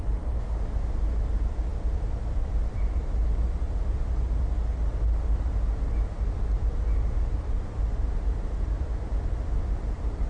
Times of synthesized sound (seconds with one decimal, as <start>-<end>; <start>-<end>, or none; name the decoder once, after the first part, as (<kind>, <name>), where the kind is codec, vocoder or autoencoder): none